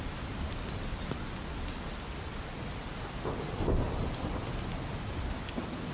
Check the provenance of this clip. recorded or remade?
recorded